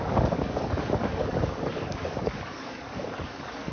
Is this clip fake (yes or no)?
yes